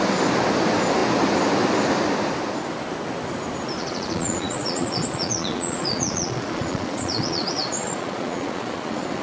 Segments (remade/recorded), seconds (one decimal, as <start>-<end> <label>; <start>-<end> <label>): 0.0-3.8 recorded; 3.8-9.2 remade